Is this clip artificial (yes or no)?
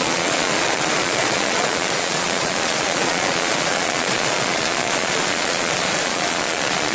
yes